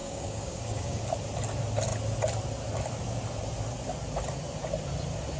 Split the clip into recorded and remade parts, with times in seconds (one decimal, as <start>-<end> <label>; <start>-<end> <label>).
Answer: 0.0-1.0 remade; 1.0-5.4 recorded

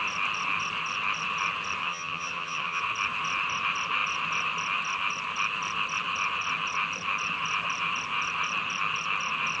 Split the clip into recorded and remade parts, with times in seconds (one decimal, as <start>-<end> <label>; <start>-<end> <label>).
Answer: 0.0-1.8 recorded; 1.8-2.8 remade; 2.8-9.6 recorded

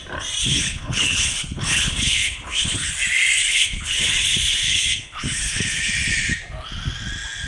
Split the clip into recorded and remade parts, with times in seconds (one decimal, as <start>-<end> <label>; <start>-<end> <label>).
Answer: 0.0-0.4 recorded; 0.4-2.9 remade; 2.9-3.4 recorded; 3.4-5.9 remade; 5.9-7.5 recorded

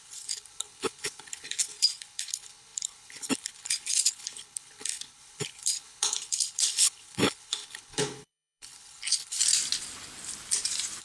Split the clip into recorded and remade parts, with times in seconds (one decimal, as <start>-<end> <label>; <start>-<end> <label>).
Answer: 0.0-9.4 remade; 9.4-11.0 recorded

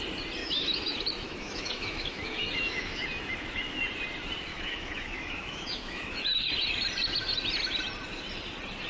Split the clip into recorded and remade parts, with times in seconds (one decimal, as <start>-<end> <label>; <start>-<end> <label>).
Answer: 0.0-0.4 recorded; 0.4-3.8 remade; 3.8-4.5 recorded; 4.5-6.5 remade; 6.5-8.9 recorded

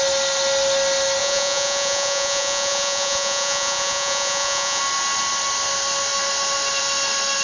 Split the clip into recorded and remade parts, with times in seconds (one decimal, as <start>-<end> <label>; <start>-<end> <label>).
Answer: 0.0-1.2 recorded; 1.2-4.8 remade; 4.8-7.4 recorded